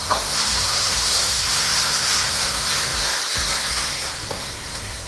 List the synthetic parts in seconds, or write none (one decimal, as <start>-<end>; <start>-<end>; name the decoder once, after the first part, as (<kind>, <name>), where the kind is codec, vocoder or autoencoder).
0.0-5.1 (codec, SNAC)